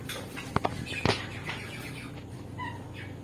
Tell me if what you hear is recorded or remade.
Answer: recorded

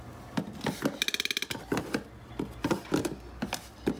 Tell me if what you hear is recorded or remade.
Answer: recorded